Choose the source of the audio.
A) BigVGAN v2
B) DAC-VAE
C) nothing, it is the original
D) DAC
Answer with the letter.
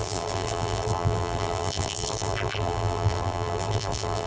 A